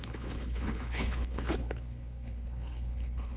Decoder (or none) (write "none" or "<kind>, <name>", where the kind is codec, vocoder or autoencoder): codec, HILCodec